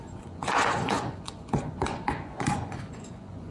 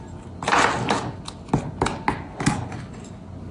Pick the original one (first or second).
second